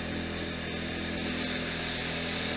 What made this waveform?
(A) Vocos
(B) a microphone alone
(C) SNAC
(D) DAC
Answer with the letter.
B